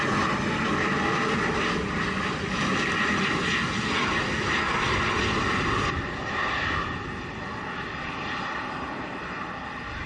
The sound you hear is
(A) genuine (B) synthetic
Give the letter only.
A